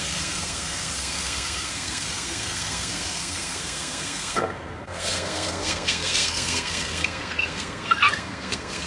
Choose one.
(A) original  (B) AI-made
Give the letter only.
B